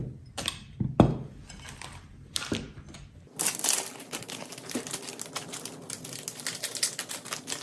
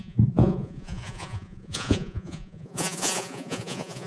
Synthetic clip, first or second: second